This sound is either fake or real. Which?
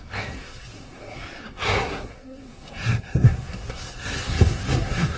fake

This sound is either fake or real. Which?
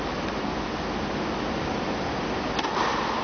real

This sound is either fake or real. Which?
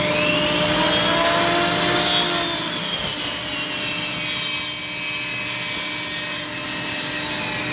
real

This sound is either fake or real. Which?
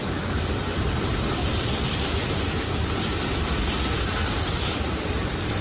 fake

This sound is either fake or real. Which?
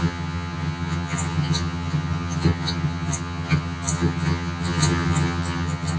fake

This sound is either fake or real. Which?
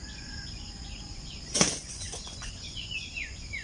fake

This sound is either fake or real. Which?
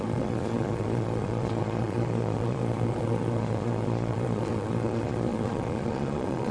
fake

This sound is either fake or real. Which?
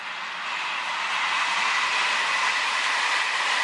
real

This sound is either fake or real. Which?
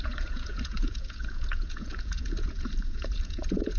fake